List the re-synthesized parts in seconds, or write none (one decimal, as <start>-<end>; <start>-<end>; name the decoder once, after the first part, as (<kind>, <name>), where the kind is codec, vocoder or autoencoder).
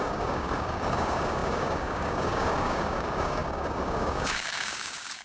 0.0-5.2 (codec, DAC)